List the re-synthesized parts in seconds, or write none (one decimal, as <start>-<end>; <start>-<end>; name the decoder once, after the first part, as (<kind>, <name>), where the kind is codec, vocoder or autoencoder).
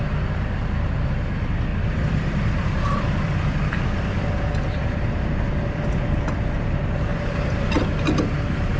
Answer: 1.7-6.2 (vocoder, BigVGAN v2); 7.1-7.8